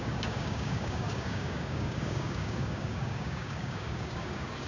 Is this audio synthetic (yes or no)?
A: yes